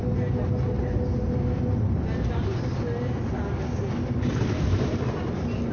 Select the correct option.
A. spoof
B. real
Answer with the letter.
B